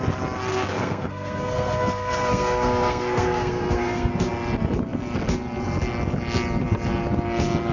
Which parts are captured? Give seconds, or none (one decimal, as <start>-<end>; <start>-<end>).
0.0-0.5; 4.1-7.7